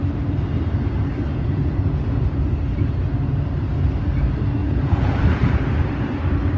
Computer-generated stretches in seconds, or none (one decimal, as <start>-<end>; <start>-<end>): 1.3-2.4; 4.6-5.2